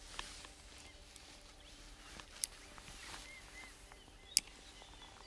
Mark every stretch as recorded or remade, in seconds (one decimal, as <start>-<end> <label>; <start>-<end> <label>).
0.0-1.0 recorded; 1.0-4.2 remade; 4.2-5.3 recorded